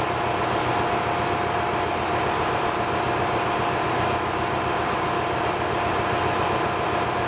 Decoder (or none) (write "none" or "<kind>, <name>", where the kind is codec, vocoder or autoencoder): none